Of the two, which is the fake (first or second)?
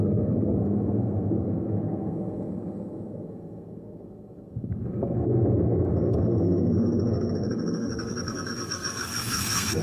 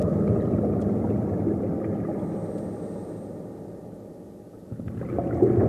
first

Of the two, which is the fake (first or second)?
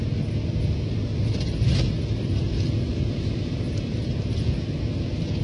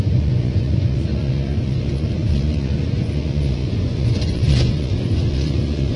second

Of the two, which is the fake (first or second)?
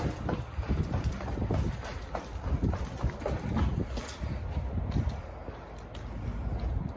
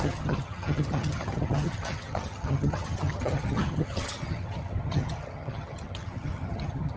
second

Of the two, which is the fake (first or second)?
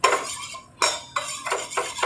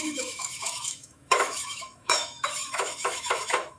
second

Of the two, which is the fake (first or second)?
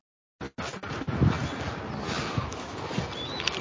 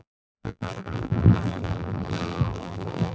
second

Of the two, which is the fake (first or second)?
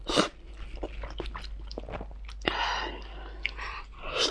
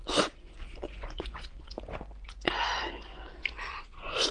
second